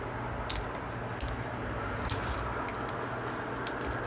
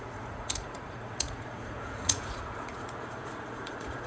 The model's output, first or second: second